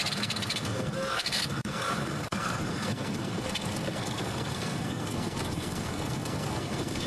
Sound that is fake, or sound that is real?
fake